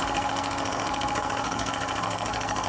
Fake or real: fake